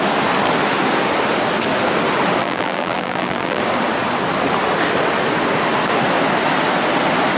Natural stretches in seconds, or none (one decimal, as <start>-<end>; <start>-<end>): 0.0-2.4; 3.6-7.4